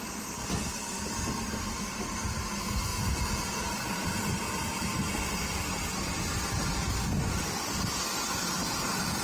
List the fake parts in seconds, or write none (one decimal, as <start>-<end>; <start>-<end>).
2.9-3.6